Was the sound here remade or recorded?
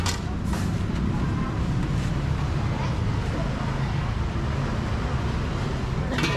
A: recorded